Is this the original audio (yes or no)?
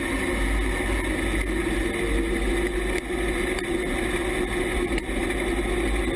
yes